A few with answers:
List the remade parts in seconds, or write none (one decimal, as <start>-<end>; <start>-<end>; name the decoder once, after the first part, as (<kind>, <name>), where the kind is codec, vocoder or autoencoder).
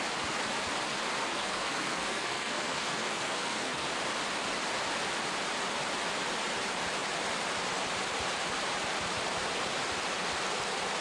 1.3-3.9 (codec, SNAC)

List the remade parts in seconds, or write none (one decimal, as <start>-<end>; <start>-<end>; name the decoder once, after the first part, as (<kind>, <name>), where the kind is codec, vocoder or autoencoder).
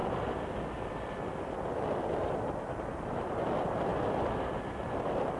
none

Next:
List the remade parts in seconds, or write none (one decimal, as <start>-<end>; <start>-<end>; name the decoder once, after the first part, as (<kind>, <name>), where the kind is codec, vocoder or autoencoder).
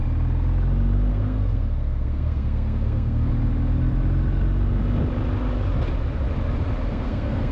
1.1-3.3 (codec, SNAC); 6.9-7.5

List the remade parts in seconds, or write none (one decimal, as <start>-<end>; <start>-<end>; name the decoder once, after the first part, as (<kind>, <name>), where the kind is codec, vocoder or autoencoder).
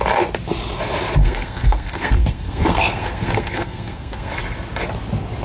1.2-4.4 (codec, SNAC)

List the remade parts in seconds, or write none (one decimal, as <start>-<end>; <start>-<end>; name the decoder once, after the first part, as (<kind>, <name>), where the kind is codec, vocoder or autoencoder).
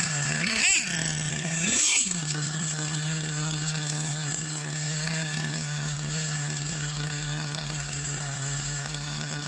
0.0-0.6 (codec, SNAC); 1.3-9.5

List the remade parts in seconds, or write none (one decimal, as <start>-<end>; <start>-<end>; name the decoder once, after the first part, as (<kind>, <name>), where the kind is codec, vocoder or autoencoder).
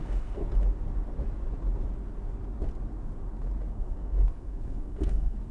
0.0-0.4 (codec, SNAC); 3.7-5.5